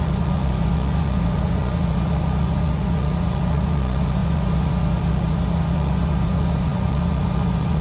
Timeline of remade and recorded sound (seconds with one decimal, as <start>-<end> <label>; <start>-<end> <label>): 0.0-7.8 remade

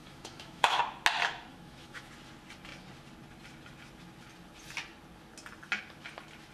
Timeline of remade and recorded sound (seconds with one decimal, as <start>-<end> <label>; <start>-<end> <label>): 0.0-0.8 remade; 0.8-1.5 recorded; 1.5-2.1 remade; 2.1-6.5 recorded

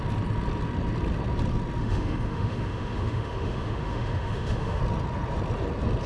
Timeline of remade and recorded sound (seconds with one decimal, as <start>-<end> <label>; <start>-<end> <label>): 0.0-1.8 recorded; 1.8-4.8 remade; 4.8-6.1 recorded

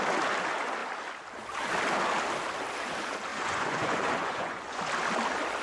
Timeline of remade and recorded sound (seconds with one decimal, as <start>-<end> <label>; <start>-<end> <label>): 0.0-3.3 recorded; 3.3-4.8 remade; 4.8-5.6 recorded

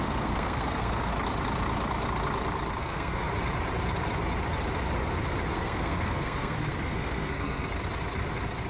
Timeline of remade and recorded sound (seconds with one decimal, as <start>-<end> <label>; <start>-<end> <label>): 0.0-1.1 remade; 1.1-2.8 recorded; 2.8-3.3 remade; 3.3-5.5 recorded; 5.5-7.7 remade; 7.7-8.7 recorded

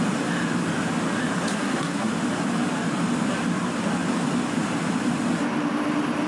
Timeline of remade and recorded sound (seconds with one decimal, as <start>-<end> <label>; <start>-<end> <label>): 0.0-1.5 recorded; 1.5-2.1 remade; 2.1-6.3 recorded

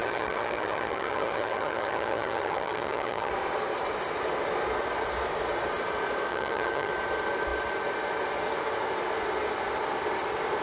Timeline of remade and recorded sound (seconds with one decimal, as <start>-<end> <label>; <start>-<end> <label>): 0.0-3.3 remade; 3.3-6.3 recorded; 6.3-6.9 remade; 6.9-10.6 recorded

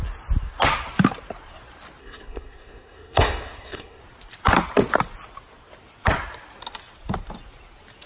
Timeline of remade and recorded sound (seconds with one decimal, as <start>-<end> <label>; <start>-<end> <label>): 0.0-2.0 recorded; 2.0-4.0 remade; 4.0-8.1 recorded